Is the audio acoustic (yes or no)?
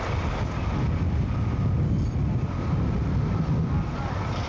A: yes